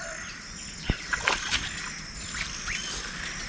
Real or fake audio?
real